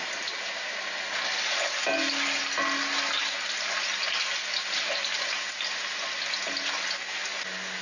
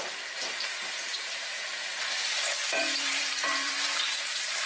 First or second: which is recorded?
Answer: first